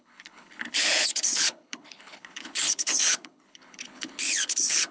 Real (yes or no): no